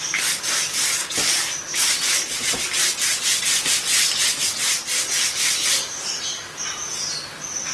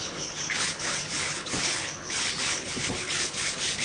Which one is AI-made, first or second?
second